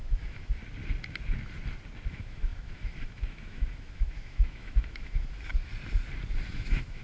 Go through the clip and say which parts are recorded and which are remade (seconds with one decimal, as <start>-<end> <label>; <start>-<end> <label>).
0.0-0.6 remade; 0.6-2.1 recorded; 2.1-5.7 remade; 5.7-6.5 recorded; 6.5-7.0 remade